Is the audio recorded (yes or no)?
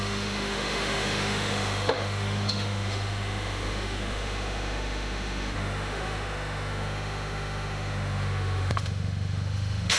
no